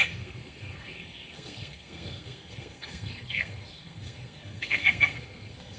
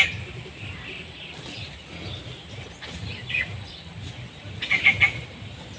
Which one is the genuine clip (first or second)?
second